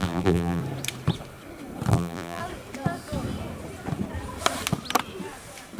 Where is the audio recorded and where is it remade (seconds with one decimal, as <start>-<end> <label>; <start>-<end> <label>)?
0.0-0.6 remade; 0.6-1.9 recorded; 1.9-2.4 remade; 2.4-5.8 recorded